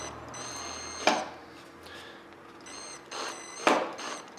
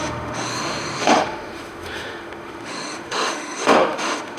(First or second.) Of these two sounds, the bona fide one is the first